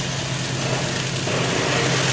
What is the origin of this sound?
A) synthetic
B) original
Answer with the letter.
B